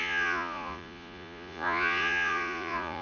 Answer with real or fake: fake